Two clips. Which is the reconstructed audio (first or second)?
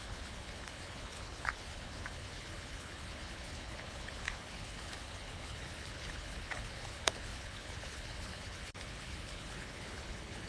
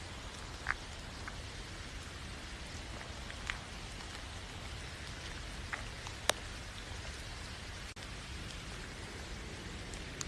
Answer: first